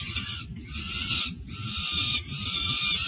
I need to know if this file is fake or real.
real